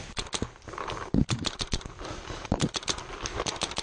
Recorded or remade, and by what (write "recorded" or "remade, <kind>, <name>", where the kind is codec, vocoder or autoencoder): recorded